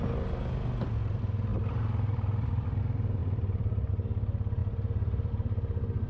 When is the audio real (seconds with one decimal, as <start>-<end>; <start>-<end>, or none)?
0.0-1.5; 2.8-3.2; 3.9-4.6; 5.3-6.1